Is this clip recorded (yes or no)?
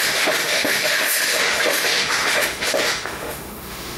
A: no